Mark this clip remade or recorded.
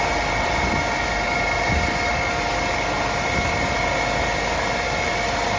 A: recorded